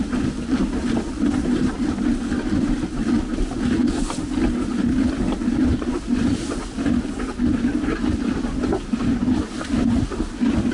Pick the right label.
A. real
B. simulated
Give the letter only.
A